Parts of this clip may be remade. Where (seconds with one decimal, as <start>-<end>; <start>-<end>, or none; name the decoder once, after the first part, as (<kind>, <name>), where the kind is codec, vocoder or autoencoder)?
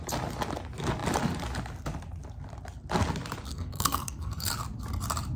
3.5-4.5 (codec, SNAC)